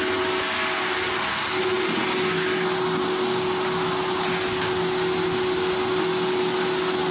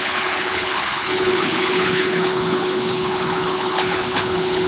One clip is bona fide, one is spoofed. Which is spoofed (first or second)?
second